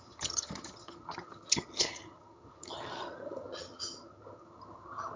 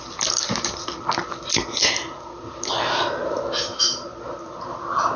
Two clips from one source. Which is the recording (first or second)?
second